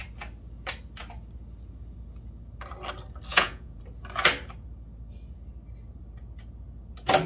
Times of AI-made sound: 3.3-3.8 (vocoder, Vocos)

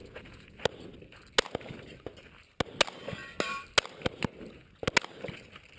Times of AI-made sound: 0.0-0.6 (vocoder, Vocos)

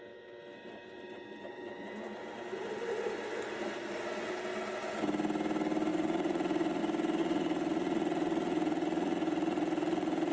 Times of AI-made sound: 5.9-6.8 (vocoder, Vocos); 7.2-10.3

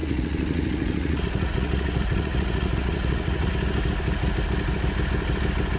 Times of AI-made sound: 0.0-3.5 (vocoder, Vocos)

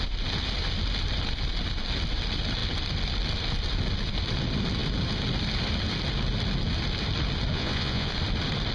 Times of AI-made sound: 7.5-8.1 (vocoder, Vocos)

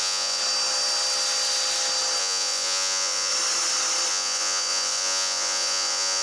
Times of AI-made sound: 0.0-0.4 (vocoder, Vocos); 2.2-3.3; 4.1-6.2